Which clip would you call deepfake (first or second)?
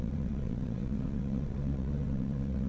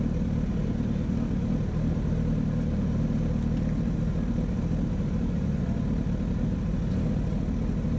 first